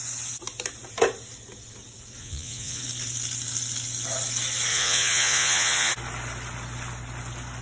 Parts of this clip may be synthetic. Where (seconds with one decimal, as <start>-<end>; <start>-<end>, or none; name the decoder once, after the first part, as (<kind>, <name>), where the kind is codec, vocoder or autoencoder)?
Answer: 2.2-2.8 (vocoder, Vocos); 4.7-5.9